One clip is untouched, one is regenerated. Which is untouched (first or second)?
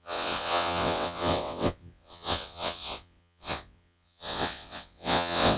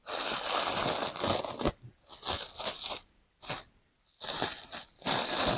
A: second